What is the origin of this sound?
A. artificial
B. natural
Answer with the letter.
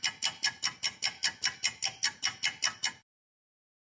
B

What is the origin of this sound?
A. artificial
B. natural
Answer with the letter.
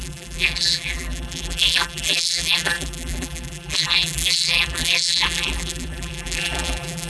A